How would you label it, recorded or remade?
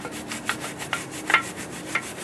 remade